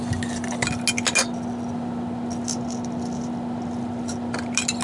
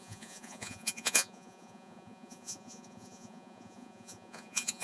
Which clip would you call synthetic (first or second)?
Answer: second